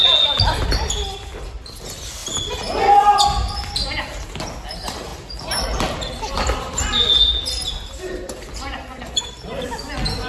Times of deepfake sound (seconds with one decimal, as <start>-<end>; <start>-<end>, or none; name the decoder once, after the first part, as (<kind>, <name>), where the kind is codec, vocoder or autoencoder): none